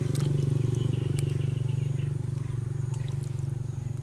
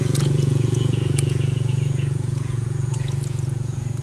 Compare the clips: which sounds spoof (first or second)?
second